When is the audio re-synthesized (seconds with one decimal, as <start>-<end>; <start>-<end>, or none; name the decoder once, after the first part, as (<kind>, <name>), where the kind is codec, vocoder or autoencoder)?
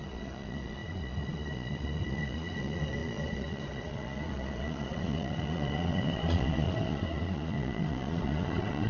0.0-8.9 (vocoder, Vocos)